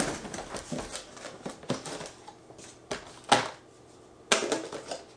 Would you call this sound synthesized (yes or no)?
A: no